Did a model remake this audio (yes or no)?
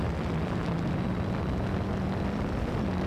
no